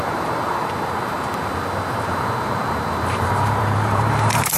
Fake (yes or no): yes